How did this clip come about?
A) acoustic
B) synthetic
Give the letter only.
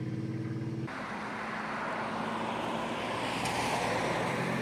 A